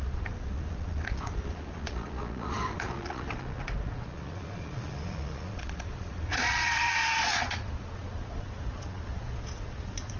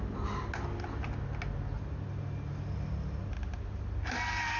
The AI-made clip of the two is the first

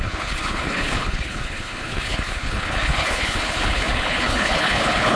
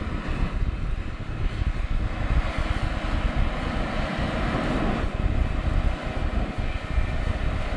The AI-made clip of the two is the first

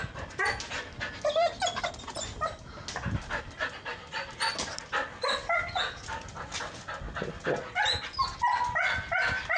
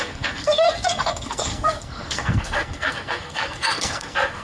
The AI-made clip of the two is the second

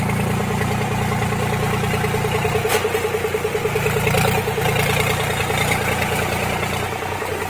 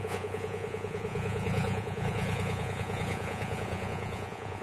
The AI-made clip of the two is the second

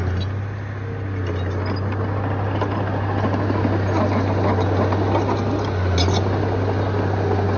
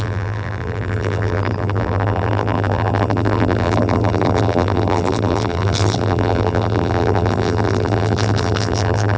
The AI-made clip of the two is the second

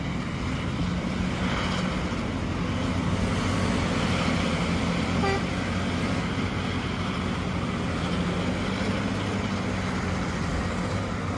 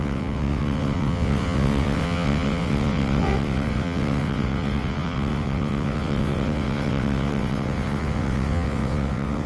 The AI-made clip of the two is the second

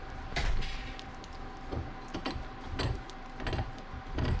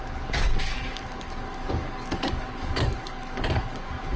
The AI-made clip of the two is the second